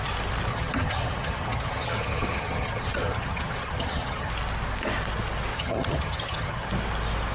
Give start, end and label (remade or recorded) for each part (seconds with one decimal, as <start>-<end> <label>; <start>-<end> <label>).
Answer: 0.0-0.5 recorded; 0.5-4.3 remade; 4.3-5.5 recorded; 5.5-6.7 remade; 6.7-7.3 recorded